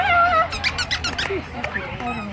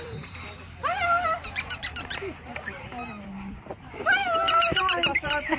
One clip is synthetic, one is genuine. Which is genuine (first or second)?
first